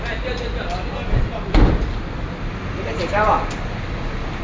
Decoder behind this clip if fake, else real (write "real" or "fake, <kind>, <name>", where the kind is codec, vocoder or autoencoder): real